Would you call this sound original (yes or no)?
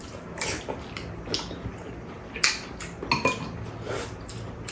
yes